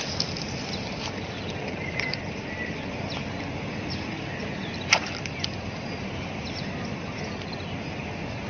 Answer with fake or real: real